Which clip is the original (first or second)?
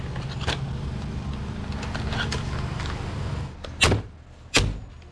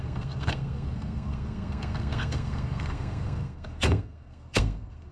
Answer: first